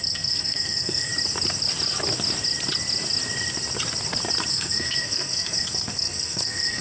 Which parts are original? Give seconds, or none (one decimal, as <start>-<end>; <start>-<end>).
1.1-4.5